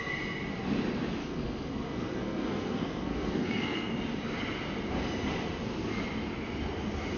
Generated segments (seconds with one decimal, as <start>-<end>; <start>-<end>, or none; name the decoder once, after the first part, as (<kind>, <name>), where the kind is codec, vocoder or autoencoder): 1.2-3.9 (codec, SNAC)

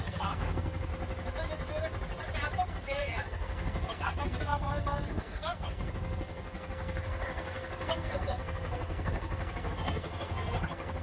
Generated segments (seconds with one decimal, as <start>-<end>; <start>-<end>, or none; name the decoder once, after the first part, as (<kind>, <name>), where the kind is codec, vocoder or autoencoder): 0.0-0.9 (codec, SNAC); 2.7-11.0

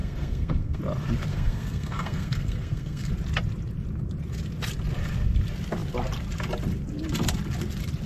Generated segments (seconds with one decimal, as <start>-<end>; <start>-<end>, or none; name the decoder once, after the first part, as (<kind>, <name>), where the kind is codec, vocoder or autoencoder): 0.0-0.8 (codec, SNAC); 1.3-3.1